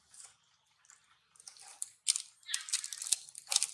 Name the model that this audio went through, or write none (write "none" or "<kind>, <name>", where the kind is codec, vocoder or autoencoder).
none